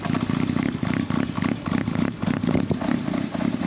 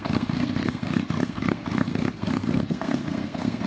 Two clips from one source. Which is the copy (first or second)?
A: second